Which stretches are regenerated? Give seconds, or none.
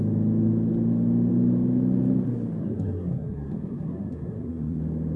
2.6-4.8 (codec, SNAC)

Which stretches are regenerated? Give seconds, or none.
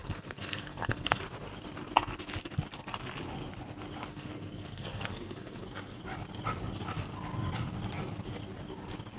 0.0-1.2 (codec, SNAC); 4.1-6.0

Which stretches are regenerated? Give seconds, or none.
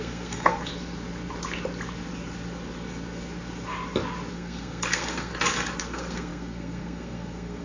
0.0-0.7 (codec, SNAC); 4.3-5.3; 5.8-7.6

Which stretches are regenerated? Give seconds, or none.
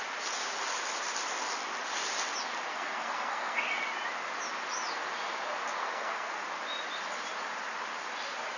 2.7-3.6 (codec, SNAC); 5.8-6.3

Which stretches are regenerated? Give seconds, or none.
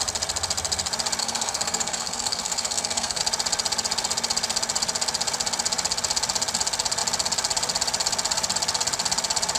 1.2-3.2 (codec, SNAC)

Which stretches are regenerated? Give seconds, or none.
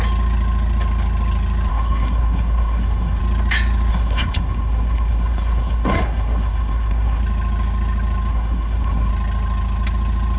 1.7-3.2 (codec, SNAC); 3.9-7.2; 8.3-9.1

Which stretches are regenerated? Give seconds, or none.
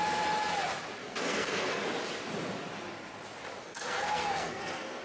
1.0-1.8 (codec, SNAC); 3.6-5.0